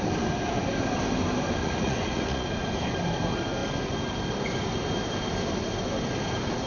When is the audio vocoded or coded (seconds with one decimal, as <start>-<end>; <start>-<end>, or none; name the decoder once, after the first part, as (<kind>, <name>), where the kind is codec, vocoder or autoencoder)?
1.6-2.5 (vocoder, Vocos)